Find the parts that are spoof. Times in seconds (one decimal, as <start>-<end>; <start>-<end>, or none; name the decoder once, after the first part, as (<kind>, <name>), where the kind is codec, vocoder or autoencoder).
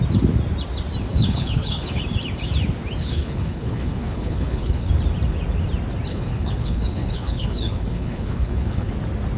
1.1-2.0 (codec, HILCodec); 3.0-4.9; 6.1-8.9